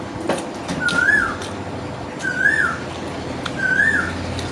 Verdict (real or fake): real